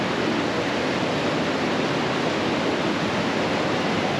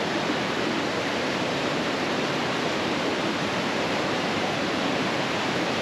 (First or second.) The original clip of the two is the first